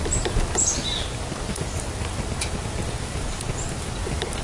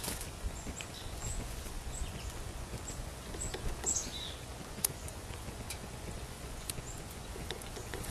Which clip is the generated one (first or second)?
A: second